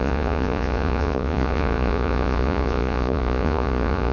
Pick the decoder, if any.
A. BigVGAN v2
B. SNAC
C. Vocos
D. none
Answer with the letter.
C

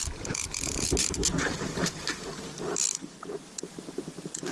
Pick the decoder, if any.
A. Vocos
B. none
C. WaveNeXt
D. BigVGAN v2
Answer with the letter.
D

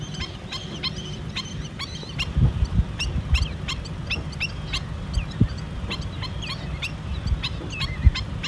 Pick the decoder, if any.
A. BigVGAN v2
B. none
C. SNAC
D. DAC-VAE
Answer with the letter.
A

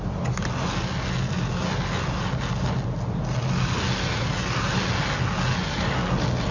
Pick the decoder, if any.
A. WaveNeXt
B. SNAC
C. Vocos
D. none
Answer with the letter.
D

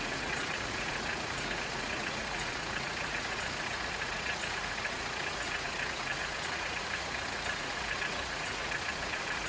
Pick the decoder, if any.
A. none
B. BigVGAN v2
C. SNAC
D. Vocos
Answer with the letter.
D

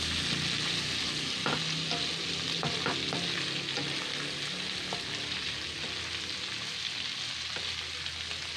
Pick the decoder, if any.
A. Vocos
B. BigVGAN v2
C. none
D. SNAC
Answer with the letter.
C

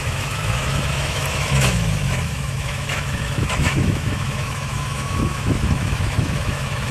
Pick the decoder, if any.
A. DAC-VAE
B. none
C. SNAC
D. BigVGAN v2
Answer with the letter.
A